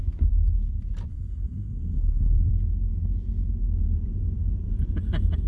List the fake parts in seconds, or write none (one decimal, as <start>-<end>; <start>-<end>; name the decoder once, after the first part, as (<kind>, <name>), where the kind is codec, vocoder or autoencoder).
1.1-2.5 (codec, SNAC)